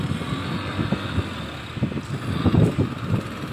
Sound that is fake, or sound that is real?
real